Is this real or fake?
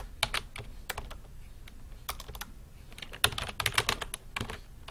real